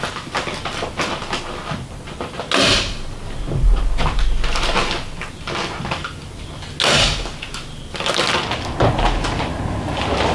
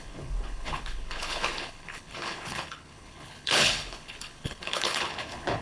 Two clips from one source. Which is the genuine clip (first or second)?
first